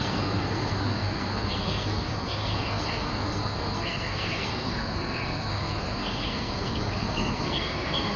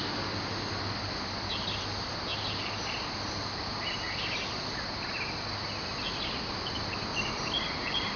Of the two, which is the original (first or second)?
second